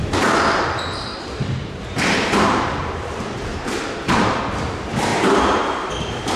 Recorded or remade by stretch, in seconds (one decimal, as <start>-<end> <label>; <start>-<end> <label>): 0.0-1.1 recorded; 1.1-4.4 remade; 4.4-5.1 recorded; 5.1-5.9 remade; 5.9-6.4 recorded